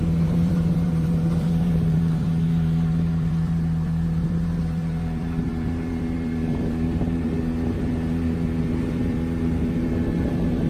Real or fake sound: fake